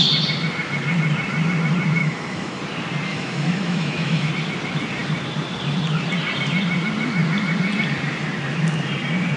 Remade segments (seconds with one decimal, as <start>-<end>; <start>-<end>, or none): 2.0-2.6; 3.1-4.3